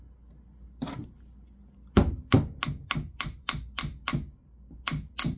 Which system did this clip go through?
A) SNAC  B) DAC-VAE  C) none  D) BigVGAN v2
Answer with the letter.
C